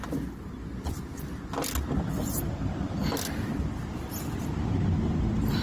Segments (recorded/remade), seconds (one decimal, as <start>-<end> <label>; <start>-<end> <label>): 0.0-5.6 recorded